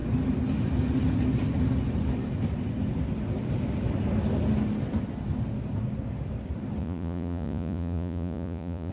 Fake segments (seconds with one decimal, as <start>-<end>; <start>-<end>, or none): 6.8-8.9